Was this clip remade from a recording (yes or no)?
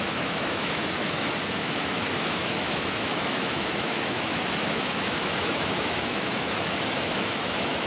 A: yes